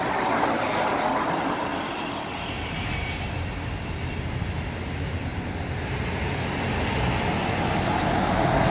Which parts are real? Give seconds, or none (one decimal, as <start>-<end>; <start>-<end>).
0.0-8.7